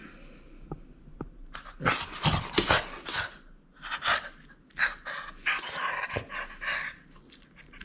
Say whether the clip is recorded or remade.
recorded